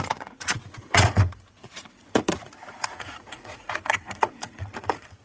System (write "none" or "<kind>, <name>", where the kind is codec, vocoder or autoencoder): vocoder, Vocos